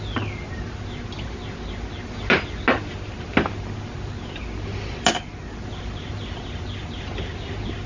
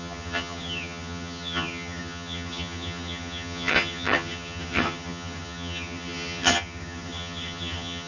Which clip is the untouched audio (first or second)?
first